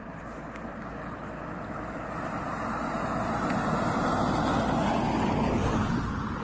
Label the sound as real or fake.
real